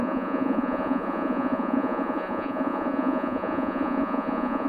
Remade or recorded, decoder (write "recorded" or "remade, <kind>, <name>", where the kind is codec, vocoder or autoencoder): remade, vocoder, Vocos